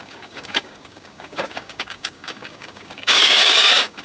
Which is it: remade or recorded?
remade